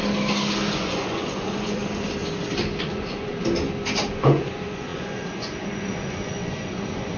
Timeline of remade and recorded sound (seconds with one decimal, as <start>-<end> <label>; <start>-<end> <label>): 0.0-0.7 recorded; 0.7-1.8 remade; 1.8-2.8 recorded; 2.8-3.3 remade; 3.3-4.1 recorded; 4.1-7.2 remade